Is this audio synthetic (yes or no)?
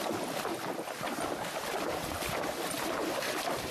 no